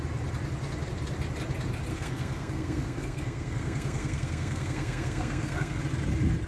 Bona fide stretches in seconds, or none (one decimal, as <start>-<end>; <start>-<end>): 0.0-1.9; 5.8-6.5